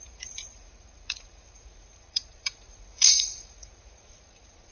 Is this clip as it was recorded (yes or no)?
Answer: no